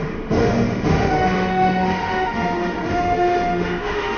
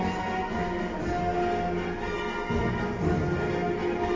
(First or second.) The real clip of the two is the second